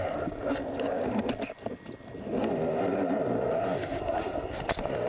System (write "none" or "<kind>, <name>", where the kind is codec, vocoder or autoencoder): none